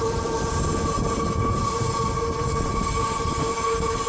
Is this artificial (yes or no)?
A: no